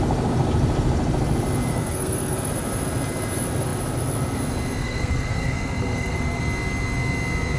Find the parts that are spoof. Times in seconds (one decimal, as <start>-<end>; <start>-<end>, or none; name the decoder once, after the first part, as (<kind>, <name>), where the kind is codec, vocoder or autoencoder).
1.7-2.5 (codec, SNAC); 4.8-6.4